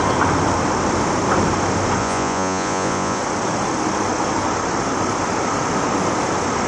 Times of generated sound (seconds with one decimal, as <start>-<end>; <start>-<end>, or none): 2.0-3.2